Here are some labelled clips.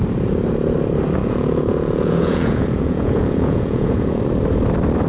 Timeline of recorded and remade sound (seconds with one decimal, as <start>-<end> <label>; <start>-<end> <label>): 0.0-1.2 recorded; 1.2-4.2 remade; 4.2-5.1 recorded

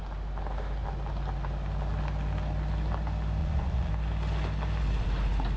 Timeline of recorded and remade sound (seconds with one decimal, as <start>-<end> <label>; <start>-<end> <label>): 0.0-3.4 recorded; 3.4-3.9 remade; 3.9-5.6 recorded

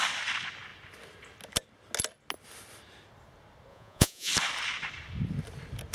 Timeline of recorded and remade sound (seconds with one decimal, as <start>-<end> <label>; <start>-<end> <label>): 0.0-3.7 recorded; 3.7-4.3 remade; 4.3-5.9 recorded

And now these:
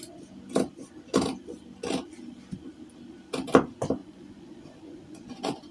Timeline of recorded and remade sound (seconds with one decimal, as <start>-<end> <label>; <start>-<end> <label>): 0.0-4.0 recorded; 4.0-5.7 remade

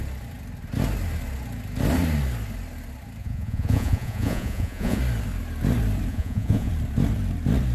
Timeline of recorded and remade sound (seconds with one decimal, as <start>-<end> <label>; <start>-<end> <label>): 0.0-3.2 recorded; 3.2-5.0 remade; 5.0-6.1 recorded; 6.1-6.7 remade; 6.7-7.7 recorded

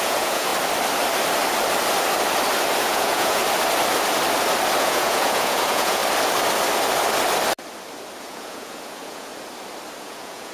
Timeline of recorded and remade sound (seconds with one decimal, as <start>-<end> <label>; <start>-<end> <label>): 0.0-0.5 remade; 0.5-2.8 recorded; 2.8-3.4 remade; 3.4-4.8 recorded; 4.8-6.0 remade; 6.0-8.2 recorded; 8.2-9.3 remade; 9.3-10.0 recorded; 10.0-10.5 remade

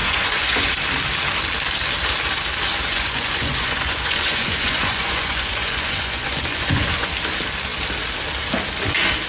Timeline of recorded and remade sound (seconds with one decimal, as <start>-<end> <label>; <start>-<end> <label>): 0.0-0.7 remade; 0.7-2.9 recorded; 2.9-7.1 remade; 7.1-9.3 recorded

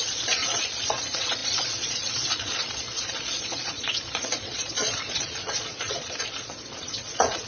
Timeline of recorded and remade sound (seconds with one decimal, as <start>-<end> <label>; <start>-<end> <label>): 0.0-7.5 remade